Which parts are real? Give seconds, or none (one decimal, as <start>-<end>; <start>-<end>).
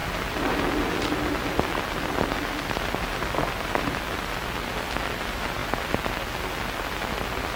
0.0-7.6